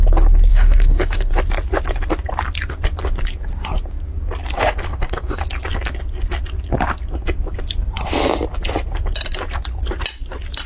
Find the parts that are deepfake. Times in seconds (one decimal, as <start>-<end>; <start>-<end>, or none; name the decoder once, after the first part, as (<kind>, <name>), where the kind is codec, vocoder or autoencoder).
0.5-1.3 (codec, DAC); 4.9-5.4